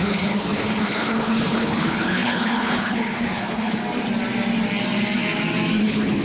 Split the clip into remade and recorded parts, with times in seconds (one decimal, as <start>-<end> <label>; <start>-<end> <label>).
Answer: 0.0-3.8 remade; 3.8-5.8 recorded; 5.8-6.2 remade